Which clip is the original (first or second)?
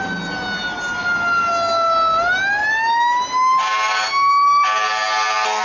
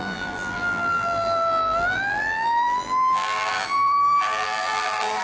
first